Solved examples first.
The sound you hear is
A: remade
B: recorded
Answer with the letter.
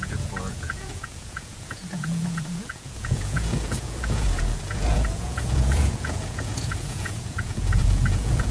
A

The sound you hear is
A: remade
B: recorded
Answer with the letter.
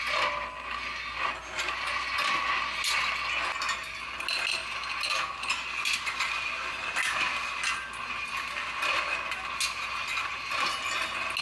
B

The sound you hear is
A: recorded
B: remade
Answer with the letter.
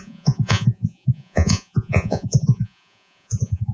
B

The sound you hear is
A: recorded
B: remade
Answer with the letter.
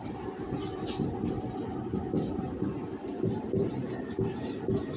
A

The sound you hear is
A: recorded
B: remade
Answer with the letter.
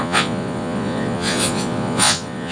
B